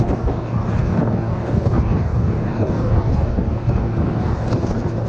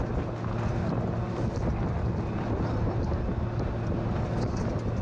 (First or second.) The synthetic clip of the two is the first